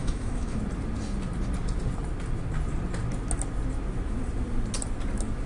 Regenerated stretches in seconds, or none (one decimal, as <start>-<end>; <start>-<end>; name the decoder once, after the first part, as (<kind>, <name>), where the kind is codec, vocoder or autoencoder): 0.0-0.6 (autoencoder, DAC-VAE)